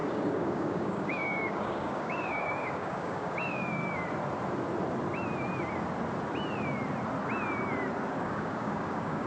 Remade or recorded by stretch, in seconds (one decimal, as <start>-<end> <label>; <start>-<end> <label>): 0.0-3.8 remade; 3.8-8.2 recorded; 8.2-9.3 remade